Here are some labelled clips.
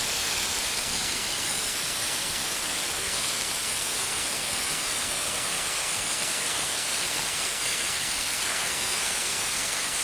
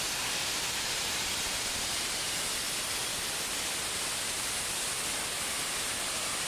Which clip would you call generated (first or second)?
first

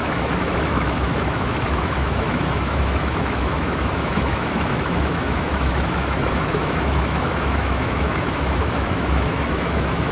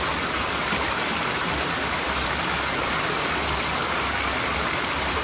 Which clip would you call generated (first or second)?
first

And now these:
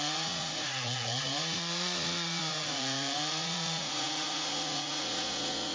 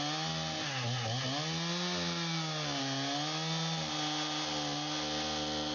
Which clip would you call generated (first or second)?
first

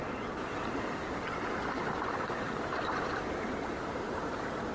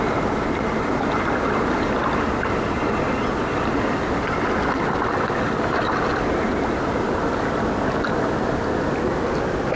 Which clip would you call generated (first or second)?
first